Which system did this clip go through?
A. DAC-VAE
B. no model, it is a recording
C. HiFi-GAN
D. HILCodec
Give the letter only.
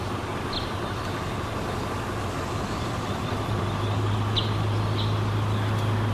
B